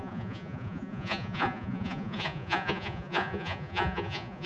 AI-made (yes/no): yes